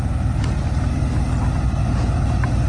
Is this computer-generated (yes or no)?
no